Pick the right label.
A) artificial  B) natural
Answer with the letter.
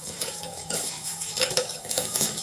A